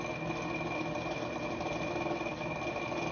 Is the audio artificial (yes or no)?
no